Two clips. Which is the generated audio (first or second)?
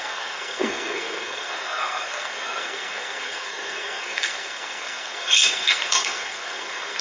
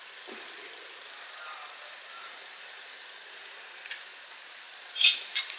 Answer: first